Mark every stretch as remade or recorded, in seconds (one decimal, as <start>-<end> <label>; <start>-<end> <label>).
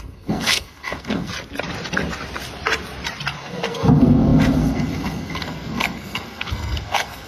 0.0-1.3 remade; 1.3-3.4 recorded; 3.4-7.3 remade